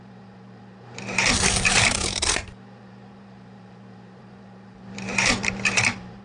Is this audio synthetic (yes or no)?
yes